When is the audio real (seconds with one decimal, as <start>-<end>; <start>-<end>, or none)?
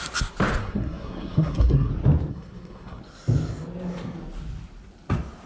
0.0-0.6; 1.9-2.3; 3.0-5.5